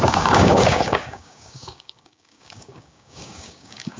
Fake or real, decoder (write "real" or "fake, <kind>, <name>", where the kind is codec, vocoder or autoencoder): fake, codec, DAC